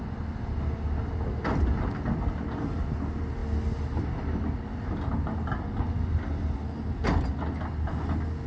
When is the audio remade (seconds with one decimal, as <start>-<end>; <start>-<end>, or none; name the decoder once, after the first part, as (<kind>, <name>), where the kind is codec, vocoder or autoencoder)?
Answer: none